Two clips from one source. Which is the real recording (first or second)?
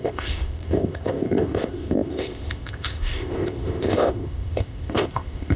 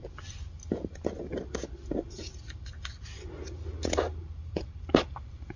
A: second